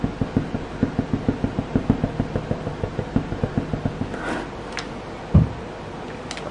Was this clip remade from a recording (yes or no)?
no